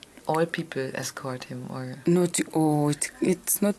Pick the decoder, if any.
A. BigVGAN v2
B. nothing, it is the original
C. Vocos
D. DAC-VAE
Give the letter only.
B